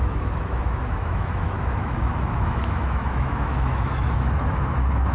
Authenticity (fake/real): fake